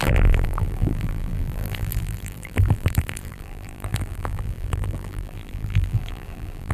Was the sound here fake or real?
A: fake